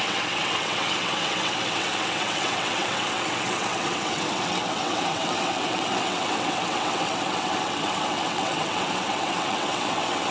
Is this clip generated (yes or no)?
yes